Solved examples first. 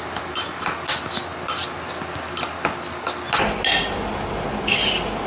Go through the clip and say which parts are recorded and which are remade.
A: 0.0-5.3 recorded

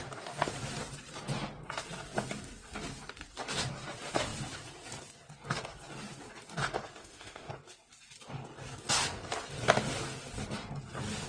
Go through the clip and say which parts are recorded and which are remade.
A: 0.0-7.0 recorded; 7.0-7.5 remade; 7.5-11.3 recorded

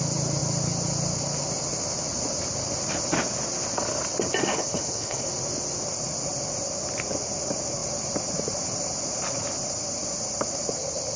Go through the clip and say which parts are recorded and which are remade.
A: 0.0-4.5 recorded; 4.5-5.3 remade; 5.3-11.2 recorded

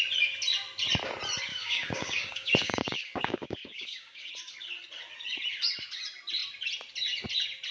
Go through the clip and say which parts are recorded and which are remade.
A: 0.0-1.5 recorded; 1.5-4.3 remade; 4.3-7.7 recorded

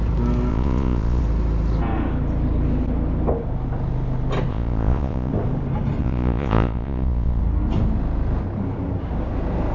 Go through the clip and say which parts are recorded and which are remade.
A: 0.0-0.5 recorded; 0.5-1.2 remade; 1.2-4.5 recorded; 4.5-5.3 remade; 5.3-6.0 recorded; 6.0-7.4 remade; 7.4-9.7 recorded

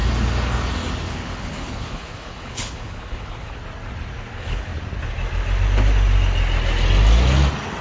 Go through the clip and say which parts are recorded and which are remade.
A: 0.0-1.1 recorded; 1.1-3.6 remade; 3.6-4.3 recorded; 4.3-4.7 remade; 4.7-7.8 recorded

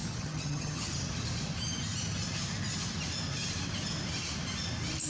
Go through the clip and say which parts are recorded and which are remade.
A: 0.0-0.9 remade; 0.9-5.1 recorded